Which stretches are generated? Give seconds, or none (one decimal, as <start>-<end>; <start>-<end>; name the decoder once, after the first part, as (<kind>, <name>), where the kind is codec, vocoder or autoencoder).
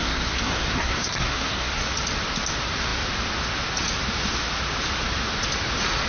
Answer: 0.0-1.8 (codec, SNAC)